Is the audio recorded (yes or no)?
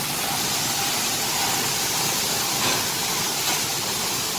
yes